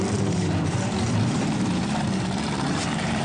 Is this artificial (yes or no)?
yes